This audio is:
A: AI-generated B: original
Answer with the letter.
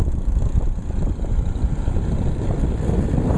B